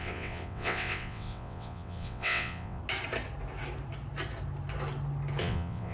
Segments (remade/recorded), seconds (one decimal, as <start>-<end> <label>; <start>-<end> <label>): 0.0-2.8 remade; 2.8-5.4 recorded; 5.4-5.9 remade